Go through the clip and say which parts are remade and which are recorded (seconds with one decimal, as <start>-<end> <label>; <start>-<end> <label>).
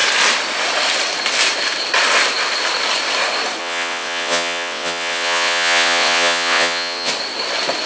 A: 0.0-3.6 recorded; 3.6-7.1 remade; 7.1-7.9 recorded